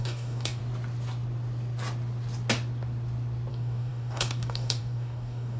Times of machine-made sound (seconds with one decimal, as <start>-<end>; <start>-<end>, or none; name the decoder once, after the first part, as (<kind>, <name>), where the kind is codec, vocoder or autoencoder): 0.0-0.6 (codec, DAC); 3.5-5.6